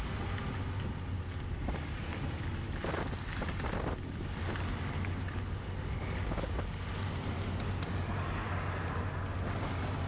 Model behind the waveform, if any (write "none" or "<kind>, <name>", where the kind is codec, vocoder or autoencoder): none